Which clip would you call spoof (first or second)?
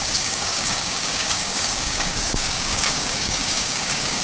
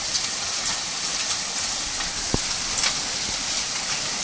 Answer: first